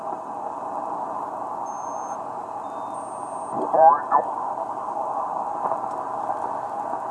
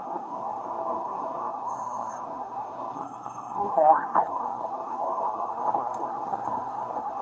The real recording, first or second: first